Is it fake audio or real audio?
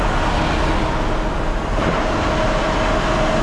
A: real